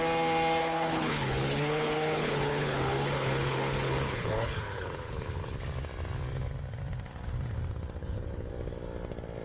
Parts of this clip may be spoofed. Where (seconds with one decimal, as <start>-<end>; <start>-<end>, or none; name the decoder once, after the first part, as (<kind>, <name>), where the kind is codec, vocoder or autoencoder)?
0.6-5.6 (codec, HILCodec); 8.0-8.5

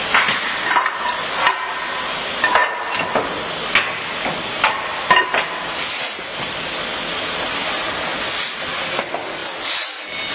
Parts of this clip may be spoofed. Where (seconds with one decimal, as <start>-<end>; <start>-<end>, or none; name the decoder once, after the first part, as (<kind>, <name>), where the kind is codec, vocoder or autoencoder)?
none

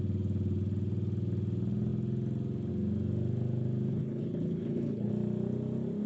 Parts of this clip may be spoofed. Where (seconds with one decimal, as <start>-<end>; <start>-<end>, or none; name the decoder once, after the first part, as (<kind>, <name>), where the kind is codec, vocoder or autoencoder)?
3.9-5.1 (codec, HILCodec)

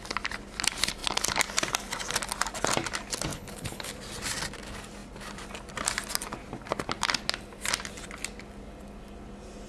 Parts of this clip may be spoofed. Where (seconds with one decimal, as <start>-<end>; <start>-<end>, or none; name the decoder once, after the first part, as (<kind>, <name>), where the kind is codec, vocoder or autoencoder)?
3.3-3.9 (codec, HILCodec)